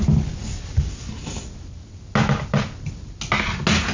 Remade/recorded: recorded